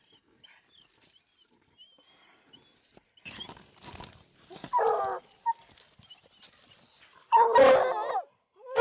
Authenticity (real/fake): real